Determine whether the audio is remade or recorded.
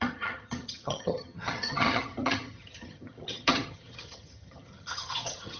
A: remade